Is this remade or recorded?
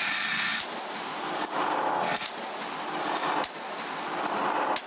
recorded